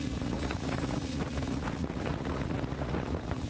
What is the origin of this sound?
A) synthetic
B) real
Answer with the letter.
A